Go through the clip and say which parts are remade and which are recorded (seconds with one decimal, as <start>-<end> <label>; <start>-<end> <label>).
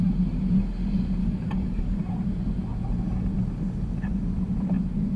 0.0-1.2 recorded; 1.2-2.0 remade; 2.0-5.2 recorded